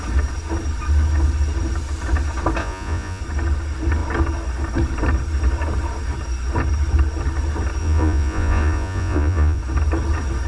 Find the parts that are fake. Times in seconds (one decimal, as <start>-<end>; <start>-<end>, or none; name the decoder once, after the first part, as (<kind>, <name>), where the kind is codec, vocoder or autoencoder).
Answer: 2.6-3.2 (vocoder, Vocos); 7.8-9.6